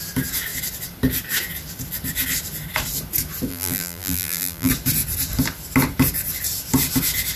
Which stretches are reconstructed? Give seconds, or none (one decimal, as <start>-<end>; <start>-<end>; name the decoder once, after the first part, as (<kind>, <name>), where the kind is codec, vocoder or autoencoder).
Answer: 3.5-4.7 (vocoder, BigVGAN v2)